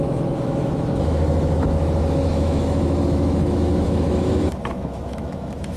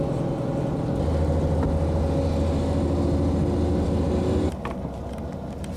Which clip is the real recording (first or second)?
second